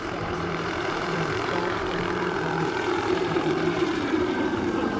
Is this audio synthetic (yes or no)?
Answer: yes